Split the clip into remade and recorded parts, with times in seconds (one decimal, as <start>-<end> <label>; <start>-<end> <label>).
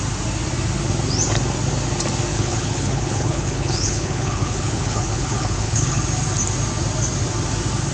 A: 0.0-2.3 recorded; 2.3-6.0 remade; 6.0-7.9 recorded